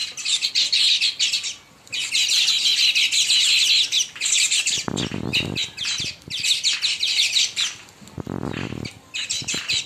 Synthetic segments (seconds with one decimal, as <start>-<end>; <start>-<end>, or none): 0.0-0.5; 6.9-9.9